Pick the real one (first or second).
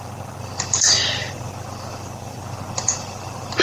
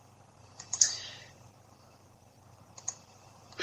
first